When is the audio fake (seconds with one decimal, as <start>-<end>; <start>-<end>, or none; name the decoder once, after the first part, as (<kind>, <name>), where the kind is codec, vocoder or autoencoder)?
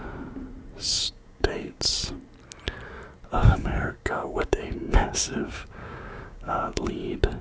0.8-1.8 (codec, DAC); 3.4-6.9